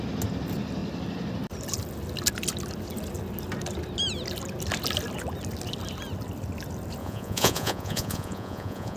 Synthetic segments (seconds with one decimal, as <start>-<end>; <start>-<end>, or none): 7.0-9.0